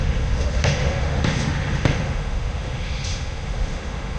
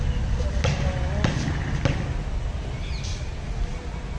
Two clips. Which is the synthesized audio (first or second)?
first